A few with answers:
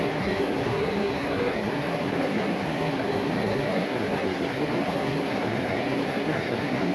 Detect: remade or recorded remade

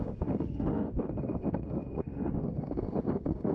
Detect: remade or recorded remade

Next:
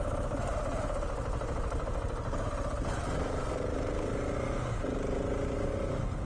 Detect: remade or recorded recorded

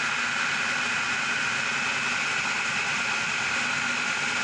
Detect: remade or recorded recorded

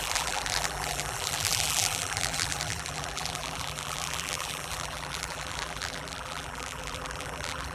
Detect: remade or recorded remade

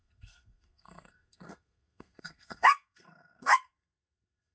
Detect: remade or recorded remade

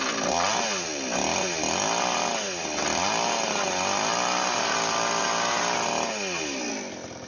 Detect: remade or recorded recorded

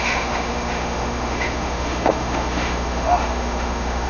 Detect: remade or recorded remade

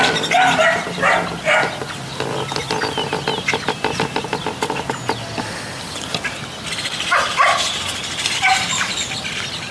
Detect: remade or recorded recorded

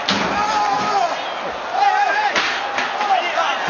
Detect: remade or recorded recorded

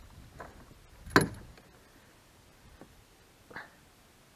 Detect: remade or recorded recorded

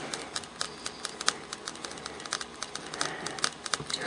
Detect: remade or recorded recorded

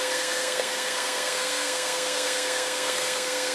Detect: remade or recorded remade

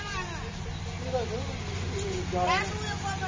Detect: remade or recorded recorded